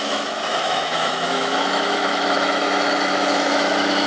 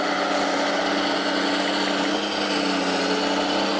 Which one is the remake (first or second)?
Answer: first